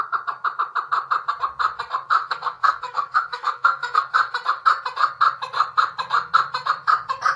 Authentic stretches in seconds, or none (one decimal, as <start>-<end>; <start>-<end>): 0.0-2.2; 4.0-7.4